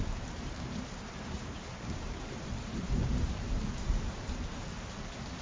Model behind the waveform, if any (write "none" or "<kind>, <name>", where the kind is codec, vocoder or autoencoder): vocoder, BigVGAN v2